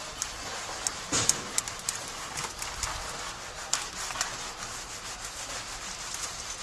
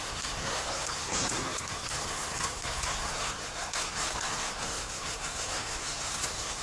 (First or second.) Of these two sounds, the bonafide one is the first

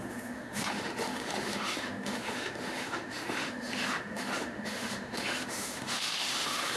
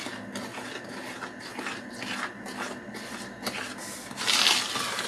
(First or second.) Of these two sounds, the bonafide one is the second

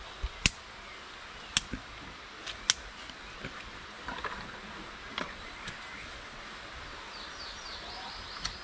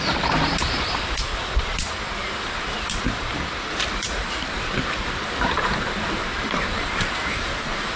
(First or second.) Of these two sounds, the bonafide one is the first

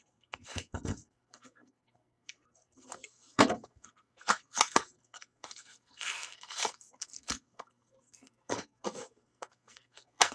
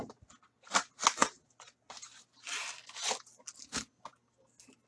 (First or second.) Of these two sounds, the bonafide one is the second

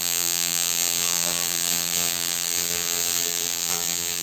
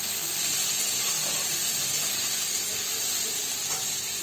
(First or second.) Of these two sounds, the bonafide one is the second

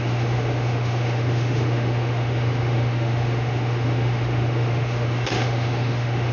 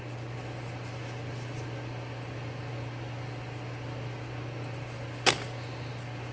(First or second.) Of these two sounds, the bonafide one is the second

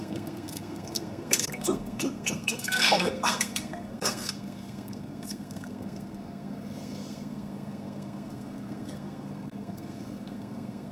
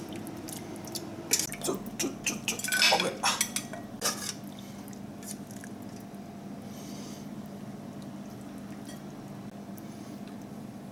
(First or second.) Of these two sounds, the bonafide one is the second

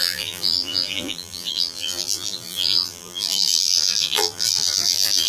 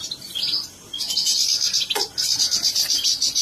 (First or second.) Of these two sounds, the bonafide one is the second